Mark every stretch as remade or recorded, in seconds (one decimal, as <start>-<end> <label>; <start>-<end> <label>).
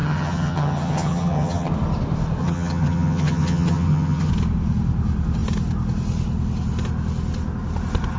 0.0-1.7 remade; 1.7-2.4 recorded; 2.4-4.3 remade; 4.3-8.2 recorded